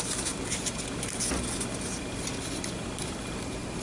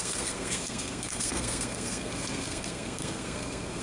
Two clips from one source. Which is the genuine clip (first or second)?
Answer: first